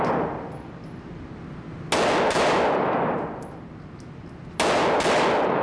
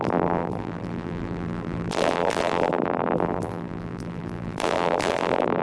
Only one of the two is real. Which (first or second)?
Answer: first